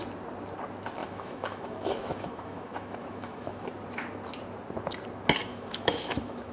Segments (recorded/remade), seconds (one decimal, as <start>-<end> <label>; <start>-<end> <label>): 0.0-1.0 recorded; 1.0-3.7 remade; 3.7-5.5 recorded; 5.5-6.5 remade